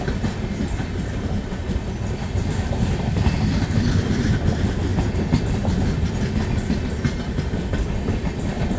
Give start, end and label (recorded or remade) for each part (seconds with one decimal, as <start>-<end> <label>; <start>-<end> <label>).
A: 0.0-4.9 remade; 4.9-7.3 recorded; 7.3-8.8 remade

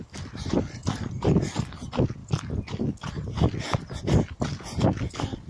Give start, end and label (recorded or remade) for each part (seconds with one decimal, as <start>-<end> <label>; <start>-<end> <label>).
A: 0.0-0.8 recorded; 0.8-1.5 remade; 1.5-5.5 recorded

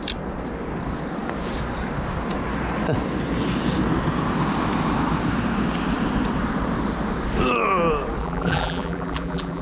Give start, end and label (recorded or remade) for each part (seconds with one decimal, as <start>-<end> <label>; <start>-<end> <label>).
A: 0.0-8.2 recorded; 8.2-9.6 remade

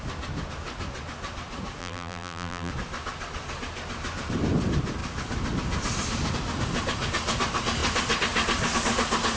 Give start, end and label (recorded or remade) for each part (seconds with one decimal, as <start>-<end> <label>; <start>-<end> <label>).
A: 0.0-1.8 recorded; 1.8-2.7 remade; 2.7-9.4 recorded

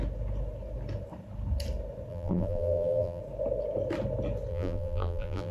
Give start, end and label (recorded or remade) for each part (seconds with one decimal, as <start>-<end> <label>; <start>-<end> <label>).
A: 0.0-2.1 recorded; 2.1-3.2 remade; 3.2-4.5 recorded; 4.5-5.5 remade

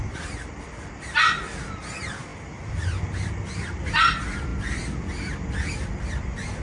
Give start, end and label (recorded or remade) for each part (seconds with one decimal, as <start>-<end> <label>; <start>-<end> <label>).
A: 0.0-2.3 recorded; 2.3-3.3 remade; 3.3-6.6 recorded

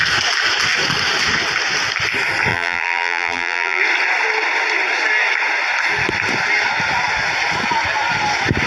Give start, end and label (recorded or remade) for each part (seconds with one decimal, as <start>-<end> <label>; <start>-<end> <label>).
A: 0.0-2.5 recorded; 2.5-3.8 remade; 3.8-8.7 recorded

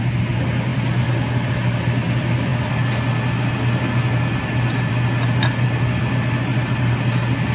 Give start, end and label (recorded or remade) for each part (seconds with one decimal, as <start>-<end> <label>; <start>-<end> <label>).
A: 0.0-7.5 recorded